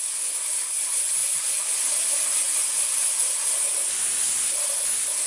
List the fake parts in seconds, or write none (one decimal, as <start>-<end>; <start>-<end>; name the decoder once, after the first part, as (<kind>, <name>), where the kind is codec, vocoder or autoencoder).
none